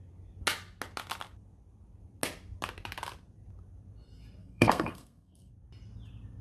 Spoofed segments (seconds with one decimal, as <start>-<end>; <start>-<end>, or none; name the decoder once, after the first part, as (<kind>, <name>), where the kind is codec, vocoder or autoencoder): 4.4-5.5 (codec, SNAC)